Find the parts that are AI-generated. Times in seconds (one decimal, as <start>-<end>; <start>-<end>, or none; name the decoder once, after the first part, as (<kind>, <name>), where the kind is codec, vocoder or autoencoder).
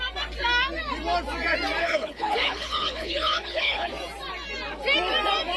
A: 1.8-3.9 (codec, HILCodec)